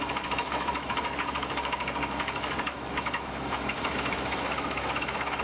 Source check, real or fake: fake